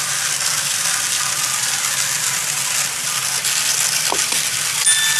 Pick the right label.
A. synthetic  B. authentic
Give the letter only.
B